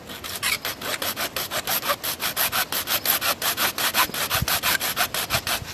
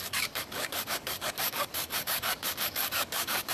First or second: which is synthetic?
second